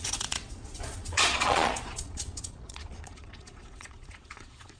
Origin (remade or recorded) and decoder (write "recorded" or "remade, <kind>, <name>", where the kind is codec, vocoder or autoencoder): remade, vocoder, Vocos